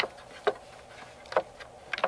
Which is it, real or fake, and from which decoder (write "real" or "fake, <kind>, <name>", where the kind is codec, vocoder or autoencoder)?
real